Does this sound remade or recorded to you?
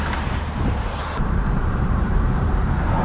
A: remade